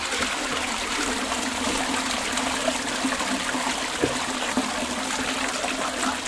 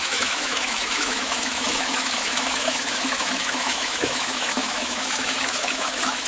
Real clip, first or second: first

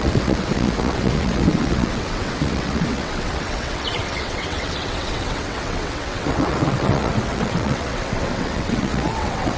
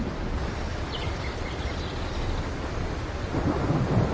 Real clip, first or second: second